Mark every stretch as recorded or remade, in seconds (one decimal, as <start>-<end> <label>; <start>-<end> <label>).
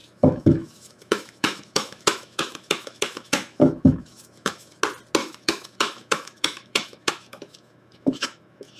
0.0-4.8 remade; 4.8-5.2 recorded; 5.2-8.8 remade